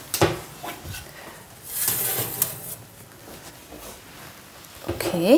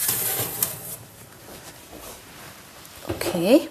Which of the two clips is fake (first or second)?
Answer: second